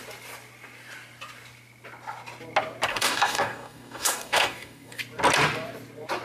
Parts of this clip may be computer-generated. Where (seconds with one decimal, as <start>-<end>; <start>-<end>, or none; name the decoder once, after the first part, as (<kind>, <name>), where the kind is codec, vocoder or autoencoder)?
2.9-5.0 (codec, DAC)